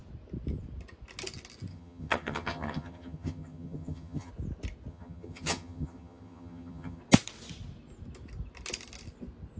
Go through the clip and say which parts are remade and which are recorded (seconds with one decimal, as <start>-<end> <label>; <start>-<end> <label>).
0.0-1.7 recorded; 1.7-4.3 remade; 4.3-4.9 recorded; 4.9-7.0 remade; 7.0-9.6 recorded